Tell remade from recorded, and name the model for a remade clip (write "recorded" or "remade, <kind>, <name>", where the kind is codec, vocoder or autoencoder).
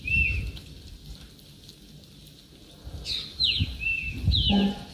recorded